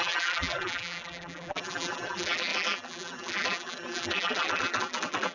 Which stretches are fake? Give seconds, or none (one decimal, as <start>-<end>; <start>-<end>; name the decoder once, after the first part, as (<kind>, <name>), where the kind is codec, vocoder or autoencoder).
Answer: 0.0-5.3 (vocoder, BigVGAN v2)